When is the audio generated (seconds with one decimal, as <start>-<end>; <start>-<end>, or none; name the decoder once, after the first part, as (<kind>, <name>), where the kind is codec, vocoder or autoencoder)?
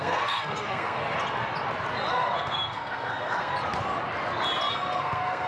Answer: 0.0-1.0 (codec, SNAC); 2.1-3.5; 4.7-5.5